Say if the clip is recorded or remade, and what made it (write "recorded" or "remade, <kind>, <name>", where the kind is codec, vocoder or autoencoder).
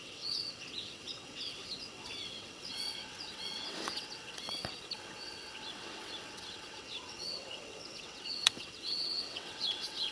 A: remade, vocoder, WaveNeXt